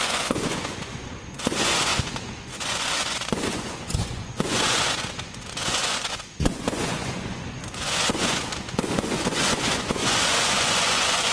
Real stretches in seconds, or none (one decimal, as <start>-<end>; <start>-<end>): none

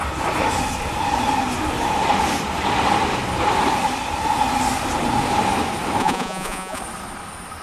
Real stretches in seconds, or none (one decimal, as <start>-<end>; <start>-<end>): 0.0-6.0; 6.8-7.6

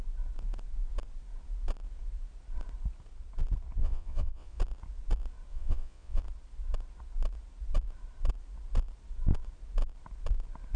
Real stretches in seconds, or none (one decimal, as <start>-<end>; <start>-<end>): 0.0-3.8; 4.6-5.5; 6.2-10.8